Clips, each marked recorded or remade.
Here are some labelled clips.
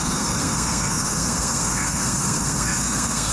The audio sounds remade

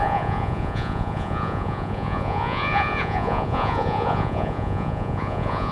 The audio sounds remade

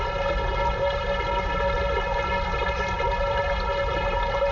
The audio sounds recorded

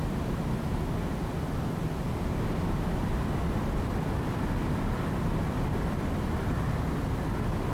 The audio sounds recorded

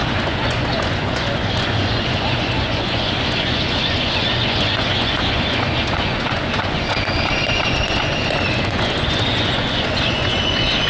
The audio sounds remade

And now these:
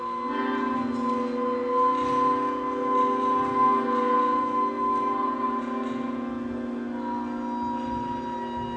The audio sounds recorded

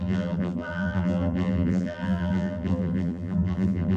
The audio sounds remade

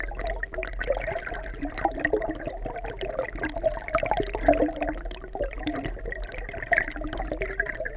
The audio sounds recorded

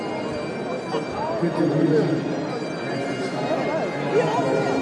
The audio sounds recorded